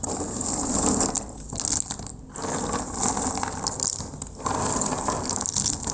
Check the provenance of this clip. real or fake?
real